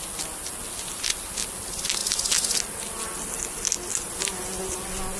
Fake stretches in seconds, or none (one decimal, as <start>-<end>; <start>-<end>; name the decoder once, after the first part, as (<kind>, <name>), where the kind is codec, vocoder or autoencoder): none